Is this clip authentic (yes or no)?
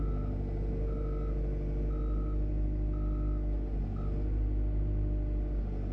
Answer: yes